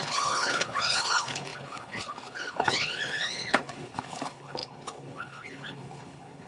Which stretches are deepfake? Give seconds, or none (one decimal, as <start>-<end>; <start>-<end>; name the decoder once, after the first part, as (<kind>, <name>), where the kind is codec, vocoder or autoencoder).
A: 0.0-6.5 (codec, HILCodec)